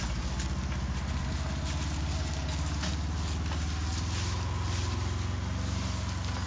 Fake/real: real